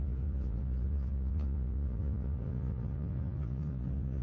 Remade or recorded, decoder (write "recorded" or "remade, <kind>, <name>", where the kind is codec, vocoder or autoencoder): remade, vocoder, Vocos